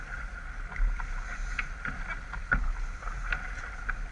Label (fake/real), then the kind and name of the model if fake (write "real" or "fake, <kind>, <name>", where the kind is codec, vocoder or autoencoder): real